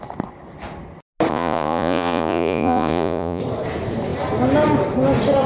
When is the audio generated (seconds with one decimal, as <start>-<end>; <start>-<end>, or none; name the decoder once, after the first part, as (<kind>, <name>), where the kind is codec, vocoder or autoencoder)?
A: 1.3-3.4 (vocoder, Vocos)